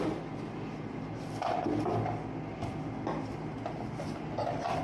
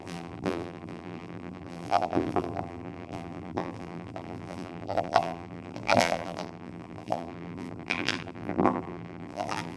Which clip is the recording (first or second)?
first